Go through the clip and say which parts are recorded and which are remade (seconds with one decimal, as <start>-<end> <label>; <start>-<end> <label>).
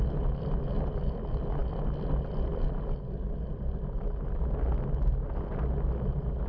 0.0-6.5 recorded